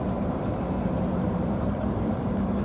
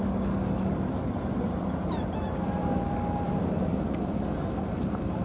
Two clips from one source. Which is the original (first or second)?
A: second